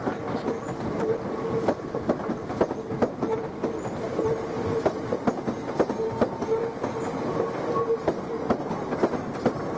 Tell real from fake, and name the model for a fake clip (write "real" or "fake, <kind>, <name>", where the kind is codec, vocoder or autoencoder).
real